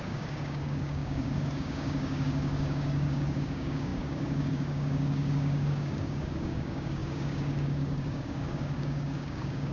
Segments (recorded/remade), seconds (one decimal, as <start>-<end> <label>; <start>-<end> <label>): 0.0-9.7 remade